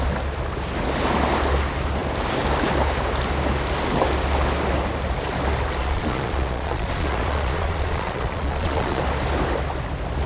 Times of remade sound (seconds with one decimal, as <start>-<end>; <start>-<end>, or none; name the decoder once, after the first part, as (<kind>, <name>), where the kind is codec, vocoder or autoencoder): 5.8-9.0 (vocoder, Vocos)

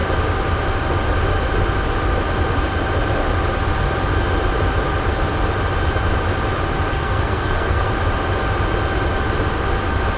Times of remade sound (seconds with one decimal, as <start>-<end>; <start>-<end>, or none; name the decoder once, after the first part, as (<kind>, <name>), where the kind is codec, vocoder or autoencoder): 6.9-7.9 (codec, SNAC)

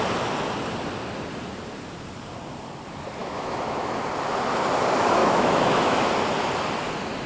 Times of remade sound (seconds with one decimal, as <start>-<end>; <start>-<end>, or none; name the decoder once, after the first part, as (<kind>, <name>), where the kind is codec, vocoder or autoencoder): 3.2-4.0 (autoencoder, DAC-VAE); 5.2-6.1

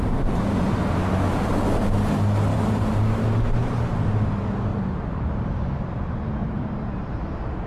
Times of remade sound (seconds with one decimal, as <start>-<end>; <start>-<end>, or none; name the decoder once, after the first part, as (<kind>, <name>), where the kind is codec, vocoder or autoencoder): 2.5-3.0 (vocoder, BigVGAN v2); 3.6-4.3; 4.7-5.3; 6.4-7.1

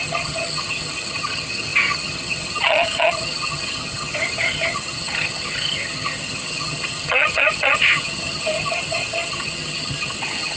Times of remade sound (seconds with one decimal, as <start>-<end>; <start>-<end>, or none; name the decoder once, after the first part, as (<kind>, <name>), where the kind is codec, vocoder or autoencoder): 0.0-10.6 (vocoder, HiFi-GAN)